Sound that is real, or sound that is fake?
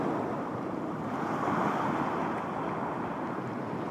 real